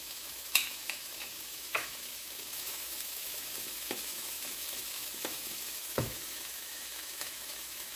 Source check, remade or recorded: remade